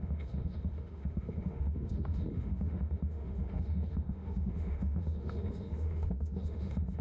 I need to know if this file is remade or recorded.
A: remade